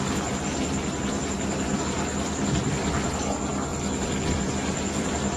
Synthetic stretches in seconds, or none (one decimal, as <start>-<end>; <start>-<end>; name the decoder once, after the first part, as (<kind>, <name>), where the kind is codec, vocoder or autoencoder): none